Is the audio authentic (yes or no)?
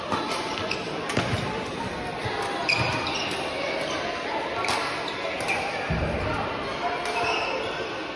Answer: yes